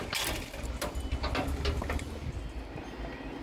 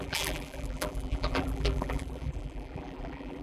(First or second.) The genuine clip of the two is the first